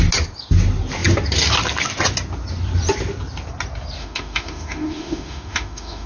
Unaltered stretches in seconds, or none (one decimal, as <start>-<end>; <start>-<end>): 0.0-4.0